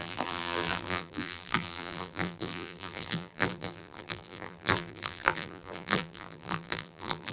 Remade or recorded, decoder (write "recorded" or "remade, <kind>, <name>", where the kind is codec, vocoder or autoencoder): remade, vocoder, BigVGAN v2